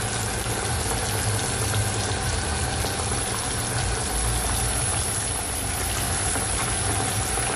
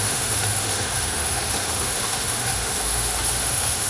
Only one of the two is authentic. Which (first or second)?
first